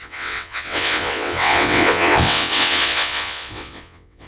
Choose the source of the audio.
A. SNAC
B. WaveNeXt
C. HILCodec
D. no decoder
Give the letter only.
B